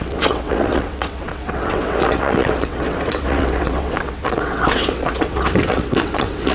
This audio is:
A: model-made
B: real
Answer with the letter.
A